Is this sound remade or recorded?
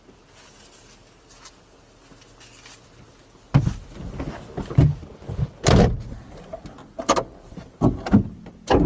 recorded